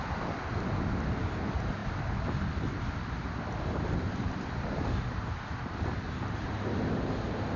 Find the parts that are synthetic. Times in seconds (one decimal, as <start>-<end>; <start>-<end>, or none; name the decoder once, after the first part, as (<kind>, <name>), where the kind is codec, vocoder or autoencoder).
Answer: none